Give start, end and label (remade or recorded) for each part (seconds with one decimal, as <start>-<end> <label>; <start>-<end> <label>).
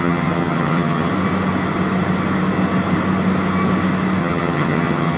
0.0-1.1 remade; 1.1-4.2 recorded; 4.2-5.2 remade